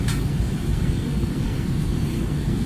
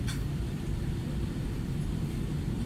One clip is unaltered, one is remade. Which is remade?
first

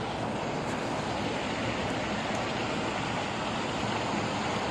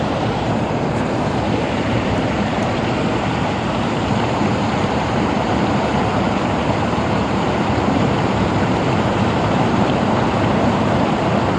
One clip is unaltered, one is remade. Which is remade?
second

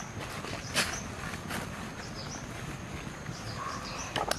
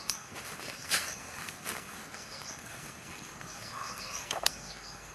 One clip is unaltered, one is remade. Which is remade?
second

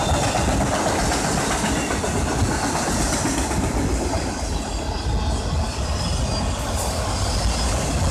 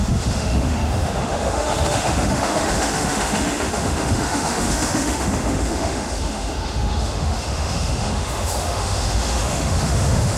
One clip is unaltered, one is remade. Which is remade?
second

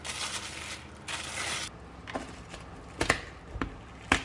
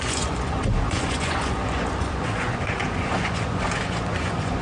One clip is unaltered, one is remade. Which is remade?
second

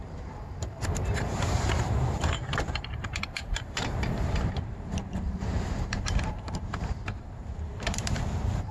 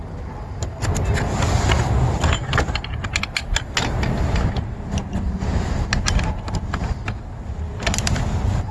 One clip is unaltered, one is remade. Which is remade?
first